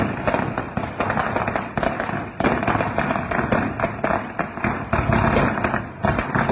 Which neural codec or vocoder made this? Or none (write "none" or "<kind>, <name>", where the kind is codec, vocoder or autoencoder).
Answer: none